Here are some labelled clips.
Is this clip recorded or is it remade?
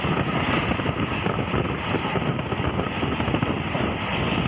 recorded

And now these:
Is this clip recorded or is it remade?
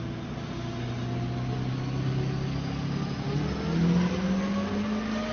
recorded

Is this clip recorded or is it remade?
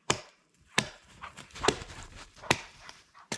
remade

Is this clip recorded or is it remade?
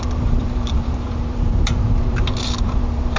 remade